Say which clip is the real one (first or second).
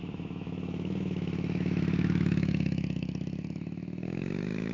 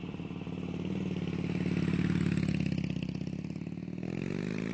second